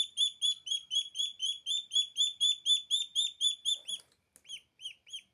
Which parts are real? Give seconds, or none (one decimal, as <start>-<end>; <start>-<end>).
0.0-5.3

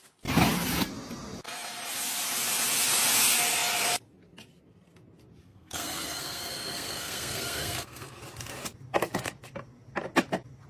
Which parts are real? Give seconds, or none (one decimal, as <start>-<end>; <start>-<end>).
0.0-5.4; 8.2-10.7

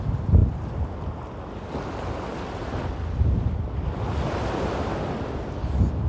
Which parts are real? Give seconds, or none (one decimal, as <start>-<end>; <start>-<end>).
0.0-6.1

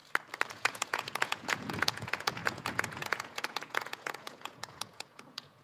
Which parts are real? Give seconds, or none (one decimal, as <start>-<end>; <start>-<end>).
0.0-0.5

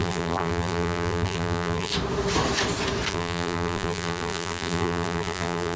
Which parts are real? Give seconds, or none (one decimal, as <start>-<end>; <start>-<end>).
1.9-3.1

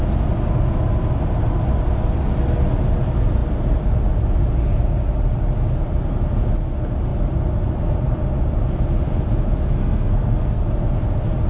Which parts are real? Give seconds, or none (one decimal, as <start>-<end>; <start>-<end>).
0.0-9.8; 10.6-11.5